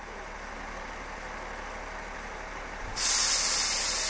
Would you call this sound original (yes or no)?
yes